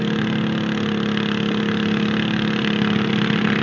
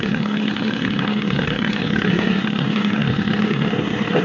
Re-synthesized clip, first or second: second